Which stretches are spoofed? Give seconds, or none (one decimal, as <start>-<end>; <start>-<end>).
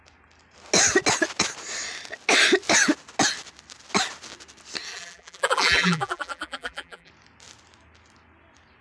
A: 4.9-7.1